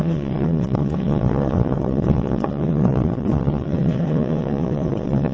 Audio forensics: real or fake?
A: fake